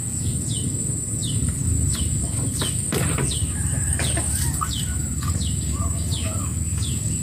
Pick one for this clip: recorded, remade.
remade